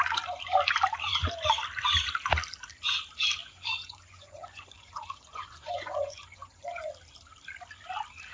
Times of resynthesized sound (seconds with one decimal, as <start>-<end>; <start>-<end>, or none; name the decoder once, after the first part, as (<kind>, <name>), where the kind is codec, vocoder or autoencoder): 3.4-6.9 (vocoder, Vocos)